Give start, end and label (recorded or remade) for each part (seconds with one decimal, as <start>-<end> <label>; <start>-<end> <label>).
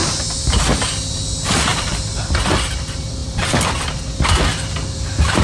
0.0-1.7 recorded; 1.7-2.3 remade; 2.3-3.2 recorded; 3.2-4.0 remade; 4.0-5.4 recorded